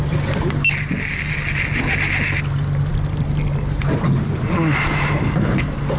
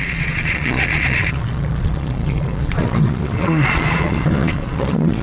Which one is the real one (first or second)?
first